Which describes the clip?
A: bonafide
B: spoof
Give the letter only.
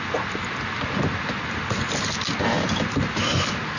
A